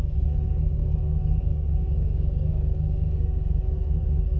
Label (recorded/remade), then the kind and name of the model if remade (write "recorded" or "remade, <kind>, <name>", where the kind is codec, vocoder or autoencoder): remade, codec, SNAC